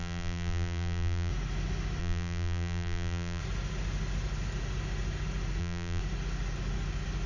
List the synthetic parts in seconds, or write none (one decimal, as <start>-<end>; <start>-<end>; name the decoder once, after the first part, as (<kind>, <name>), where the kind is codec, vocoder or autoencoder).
0.0-1.3 (vocoder, BigVGAN v2); 2.0-3.4; 5.6-6.0